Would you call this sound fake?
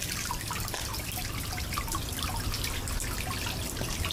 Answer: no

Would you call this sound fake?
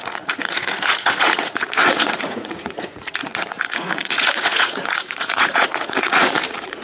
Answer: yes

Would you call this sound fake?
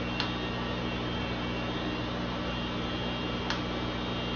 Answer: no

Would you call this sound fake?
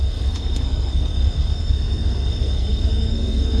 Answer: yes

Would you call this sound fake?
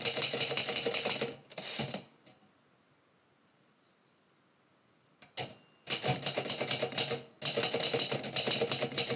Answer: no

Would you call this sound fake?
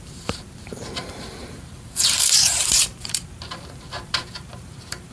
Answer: yes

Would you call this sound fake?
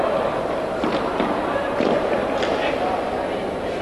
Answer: no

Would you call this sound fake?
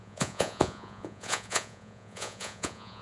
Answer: yes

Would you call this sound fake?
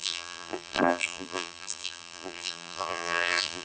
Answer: yes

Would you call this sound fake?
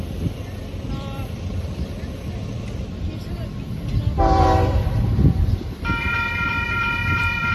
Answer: yes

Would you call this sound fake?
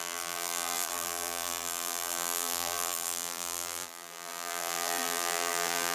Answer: yes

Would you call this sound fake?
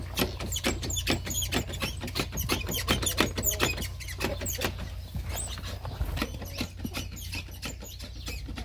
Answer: no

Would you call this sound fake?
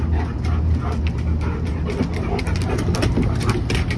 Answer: no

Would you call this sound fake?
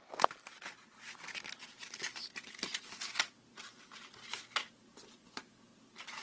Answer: no